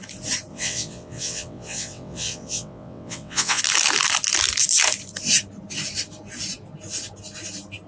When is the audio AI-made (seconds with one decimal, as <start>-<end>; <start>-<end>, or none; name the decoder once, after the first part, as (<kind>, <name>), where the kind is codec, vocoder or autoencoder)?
0.5-3.6 (vocoder, WaveNeXt)